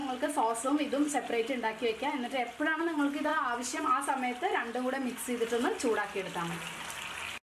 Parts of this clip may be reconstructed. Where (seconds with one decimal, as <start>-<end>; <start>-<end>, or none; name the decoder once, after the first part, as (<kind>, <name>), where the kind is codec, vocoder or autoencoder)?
2.8-3.3 (vocoder, BigVGAN v2)